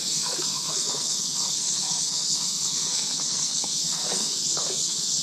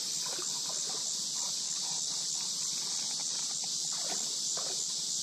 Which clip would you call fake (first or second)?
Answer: first